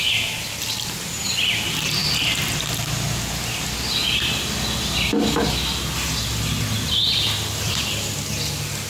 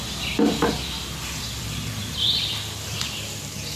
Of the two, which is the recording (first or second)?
first